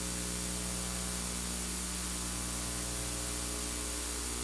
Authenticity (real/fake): real